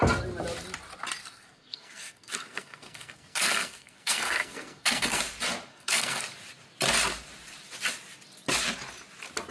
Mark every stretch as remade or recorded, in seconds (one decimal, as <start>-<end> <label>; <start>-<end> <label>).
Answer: 0.0-1.2 recorded; 1.2-5.2 remade; 5.2-5.7 recorded; 5.7-6.2 remade; 6.2-9.5 recorded